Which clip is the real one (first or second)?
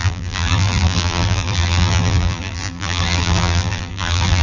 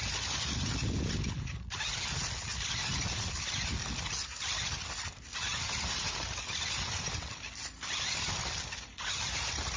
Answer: second